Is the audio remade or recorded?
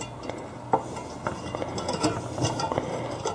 recorded